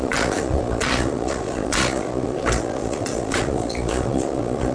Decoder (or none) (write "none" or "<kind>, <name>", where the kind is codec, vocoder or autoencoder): vocoder, Vocos